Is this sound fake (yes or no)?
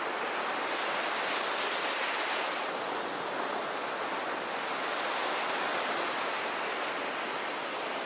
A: no